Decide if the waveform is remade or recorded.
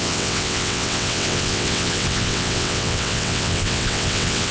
remade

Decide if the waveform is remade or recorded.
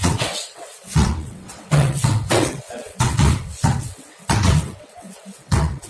remade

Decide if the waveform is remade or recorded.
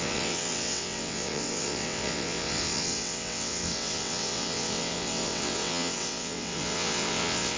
remade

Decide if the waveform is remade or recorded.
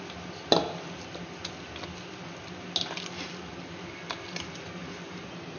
recorded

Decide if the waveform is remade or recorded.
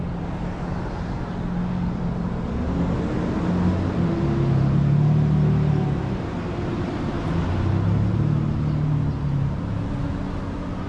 recorded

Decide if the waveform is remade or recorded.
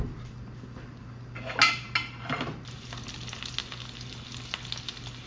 recorded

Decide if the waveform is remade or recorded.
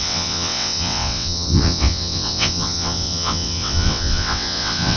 remade